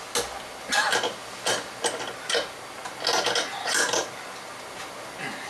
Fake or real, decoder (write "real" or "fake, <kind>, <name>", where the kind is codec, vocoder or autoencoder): real